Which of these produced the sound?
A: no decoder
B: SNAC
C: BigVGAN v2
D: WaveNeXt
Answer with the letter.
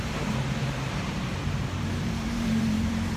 C